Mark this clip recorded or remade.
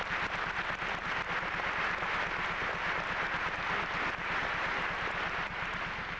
recorded